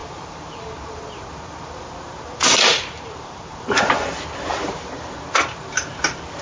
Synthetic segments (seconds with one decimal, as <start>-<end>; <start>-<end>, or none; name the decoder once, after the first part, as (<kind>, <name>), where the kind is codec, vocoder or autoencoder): 0.0-3.8 (vocoder, BigVGAN v2); 4.5-5.3